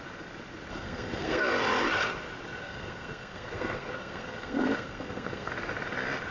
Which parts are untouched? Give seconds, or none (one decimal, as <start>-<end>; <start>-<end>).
0.0-0.7; 1.4-2.6; 5.5-6.3